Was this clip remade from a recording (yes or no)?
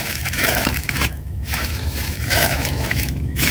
yes